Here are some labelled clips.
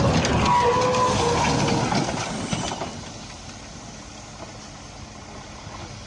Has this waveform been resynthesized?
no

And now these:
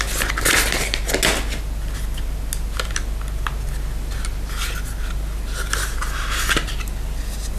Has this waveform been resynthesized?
no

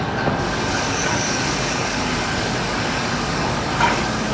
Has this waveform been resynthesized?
yes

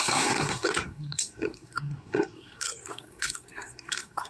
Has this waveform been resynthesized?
yes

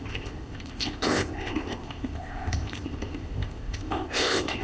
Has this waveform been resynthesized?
yes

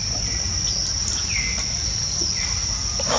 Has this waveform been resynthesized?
no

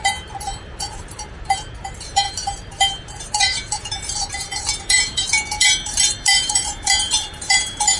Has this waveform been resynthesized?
yes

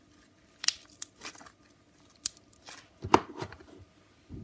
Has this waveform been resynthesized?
no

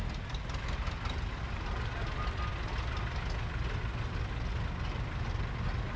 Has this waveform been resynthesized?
no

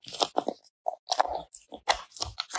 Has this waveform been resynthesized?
no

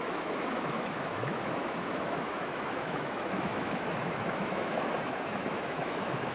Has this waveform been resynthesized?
yes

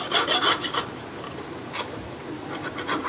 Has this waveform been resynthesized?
no